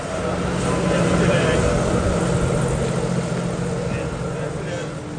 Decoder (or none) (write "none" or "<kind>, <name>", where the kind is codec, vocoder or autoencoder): none